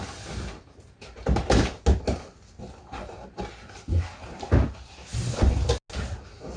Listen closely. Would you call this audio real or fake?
real